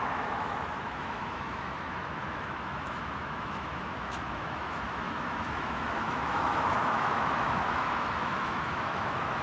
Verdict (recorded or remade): remade